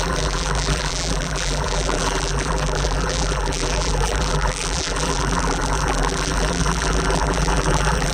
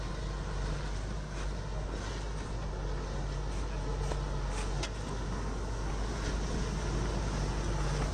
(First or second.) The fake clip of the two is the first